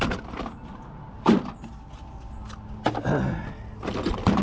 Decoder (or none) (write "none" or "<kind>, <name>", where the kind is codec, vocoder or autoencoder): none